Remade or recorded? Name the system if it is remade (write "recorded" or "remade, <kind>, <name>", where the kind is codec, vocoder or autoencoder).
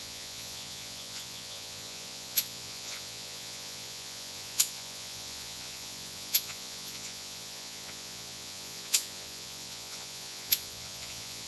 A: remade, vocoder, Vocos